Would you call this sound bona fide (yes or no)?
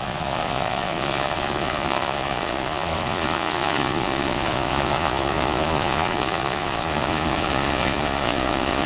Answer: no